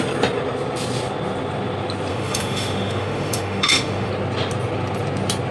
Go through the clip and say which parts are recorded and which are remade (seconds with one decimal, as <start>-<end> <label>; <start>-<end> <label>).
0.0-2.1 recorded; 2.1-4.1 remade; 4.1-5.5 recorded